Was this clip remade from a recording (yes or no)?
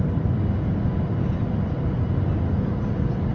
no